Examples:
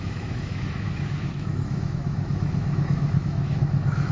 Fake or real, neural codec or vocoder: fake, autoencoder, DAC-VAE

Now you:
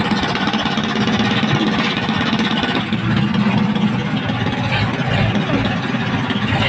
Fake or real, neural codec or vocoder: real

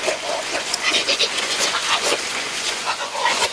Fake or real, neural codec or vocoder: fake, vocoder, Vocos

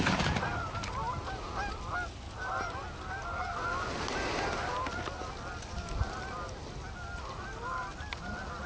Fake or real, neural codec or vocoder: real